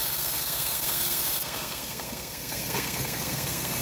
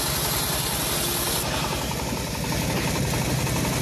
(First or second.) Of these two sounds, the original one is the second